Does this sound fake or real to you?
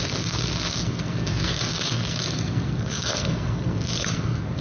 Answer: fake